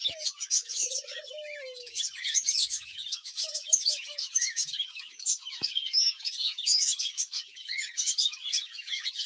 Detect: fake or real fake